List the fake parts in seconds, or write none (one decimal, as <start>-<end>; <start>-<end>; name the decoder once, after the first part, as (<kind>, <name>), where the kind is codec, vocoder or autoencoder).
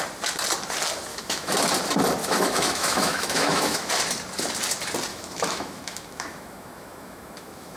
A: 1.1-1.7 (autoencoder, DAC-VAE); 2.2-3.9; 5.1-7.8